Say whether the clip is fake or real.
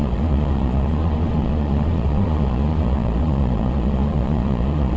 fake